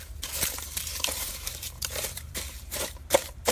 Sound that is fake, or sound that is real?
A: fake